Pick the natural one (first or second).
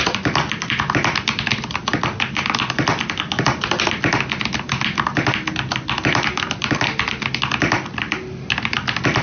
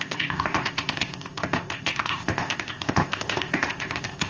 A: first